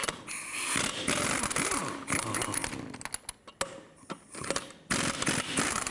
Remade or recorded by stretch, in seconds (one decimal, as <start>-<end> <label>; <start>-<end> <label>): 0.0-0.8 remade; 0.8-5.9 recorded